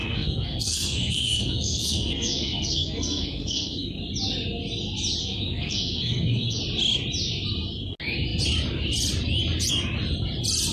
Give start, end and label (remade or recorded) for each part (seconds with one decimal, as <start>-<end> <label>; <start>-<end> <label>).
0.0-4.0 remade; 4.0-5.2 recorded; 5.2-6.6 remade; 6.6-10.7 recorded